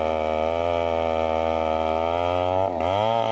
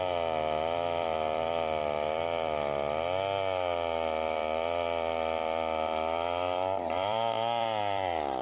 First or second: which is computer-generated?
second